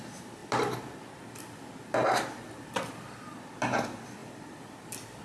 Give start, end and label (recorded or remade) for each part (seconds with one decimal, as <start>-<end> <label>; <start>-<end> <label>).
0.0-5.2 recorded